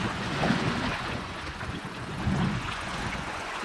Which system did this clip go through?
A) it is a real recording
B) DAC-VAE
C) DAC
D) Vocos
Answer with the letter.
D